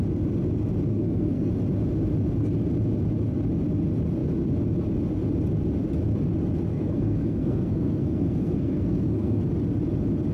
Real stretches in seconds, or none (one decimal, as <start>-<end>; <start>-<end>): 0.0-0.9; 1.5-6.7; 9.4-10.3